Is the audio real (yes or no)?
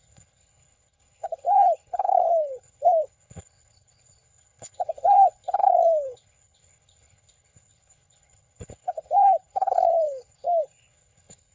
no